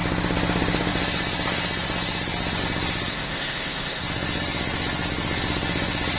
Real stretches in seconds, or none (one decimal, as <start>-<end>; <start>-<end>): 0.0-3.1; 4.0-6.2